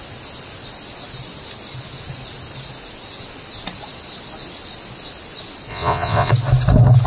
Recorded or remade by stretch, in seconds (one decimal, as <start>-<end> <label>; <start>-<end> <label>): 0.0-5.7 recorded; 5.7-6.3 remade; 6.3-7.1 recorded